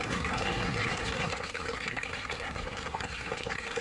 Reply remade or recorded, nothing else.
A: remade